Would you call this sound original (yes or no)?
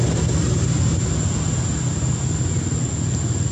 yes